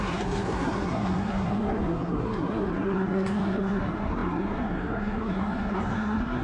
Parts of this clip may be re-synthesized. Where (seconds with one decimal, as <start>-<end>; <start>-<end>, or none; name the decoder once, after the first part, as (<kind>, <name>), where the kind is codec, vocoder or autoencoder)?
0.0-6.4 (codec, SNAC)